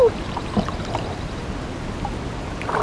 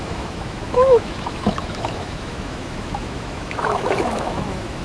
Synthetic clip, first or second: second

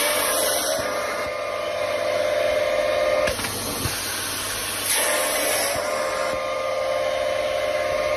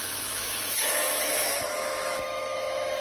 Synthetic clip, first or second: second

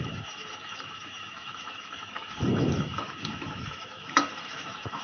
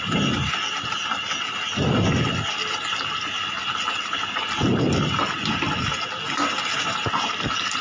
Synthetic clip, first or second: first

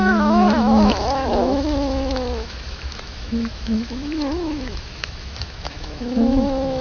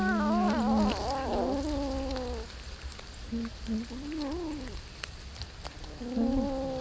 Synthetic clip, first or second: first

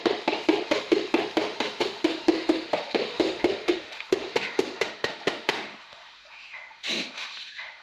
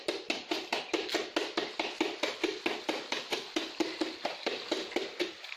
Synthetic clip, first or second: first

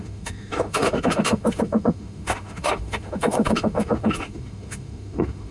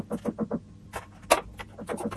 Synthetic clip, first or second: first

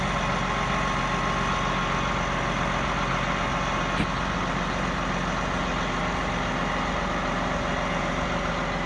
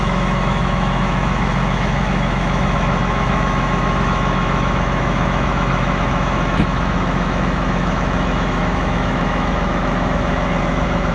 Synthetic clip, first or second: second